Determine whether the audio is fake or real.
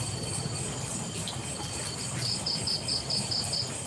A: real